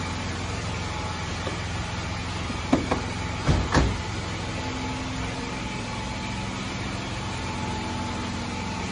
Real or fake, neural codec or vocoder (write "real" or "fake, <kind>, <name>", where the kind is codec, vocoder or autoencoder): real